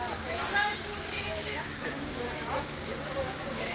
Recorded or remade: remade